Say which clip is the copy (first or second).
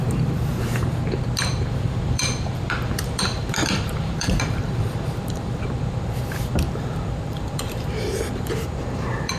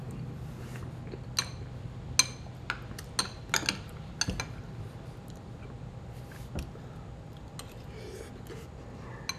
first